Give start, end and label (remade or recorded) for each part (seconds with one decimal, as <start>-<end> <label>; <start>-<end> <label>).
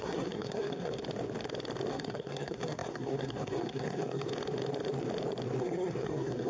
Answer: 0.0-1.0 remade; 1.0-1.9 recorded; 1.9-4.3 remade; 4.3-5.6 recorded; 5.6-6.5 remade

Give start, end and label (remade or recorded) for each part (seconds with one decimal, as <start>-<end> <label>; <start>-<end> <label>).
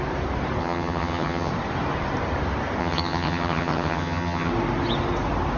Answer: 0.0-0.6 recorded; 0.6-1.5 remade; 1.5-2.8 recorded; 2.8-4.5 remade; 4.5-5.6 recorded